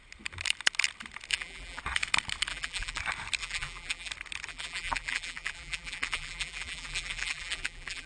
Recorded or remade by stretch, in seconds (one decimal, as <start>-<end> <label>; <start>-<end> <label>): 0.0-1.3 recorded; 1.3-1.8 remade; 1.8-2.5 recorded; 2.5-3.0 remade; 3.0-3.4 recorded; 3.4-4.1 remade; 4.1-4.5 recorded; 4.5-8.1 remade